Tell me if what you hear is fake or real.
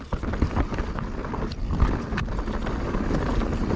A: real